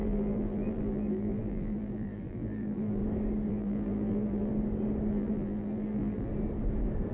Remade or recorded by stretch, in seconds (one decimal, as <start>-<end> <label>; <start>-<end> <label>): 0.0-3.0 remade; 3.0-3.5 recorded; 3.5-4.5 remade; 4.5-5.1 recorded; 5.1-6.3 remade; 6.3-7.1 recorded